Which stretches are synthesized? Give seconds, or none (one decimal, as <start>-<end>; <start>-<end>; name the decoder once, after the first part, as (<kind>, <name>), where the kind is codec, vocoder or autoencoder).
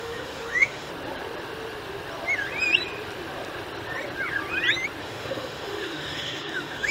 0.0-0.9 (autoencoder, DAC-VAE); 5.0-6.9